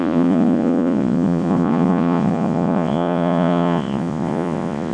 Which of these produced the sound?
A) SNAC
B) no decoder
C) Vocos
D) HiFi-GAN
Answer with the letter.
C